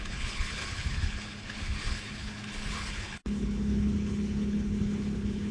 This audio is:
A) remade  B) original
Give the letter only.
A